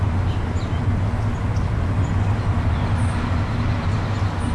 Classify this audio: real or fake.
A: real